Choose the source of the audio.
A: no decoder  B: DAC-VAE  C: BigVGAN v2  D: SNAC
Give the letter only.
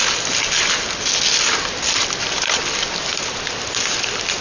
A